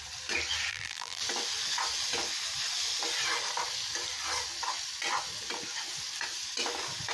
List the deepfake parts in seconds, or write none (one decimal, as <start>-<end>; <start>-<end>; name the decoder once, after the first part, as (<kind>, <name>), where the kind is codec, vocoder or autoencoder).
0.7-1.2 (vocoder, BigVGAN v2)